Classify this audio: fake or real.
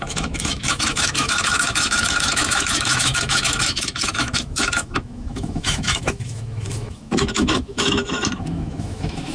fake